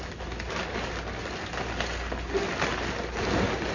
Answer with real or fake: real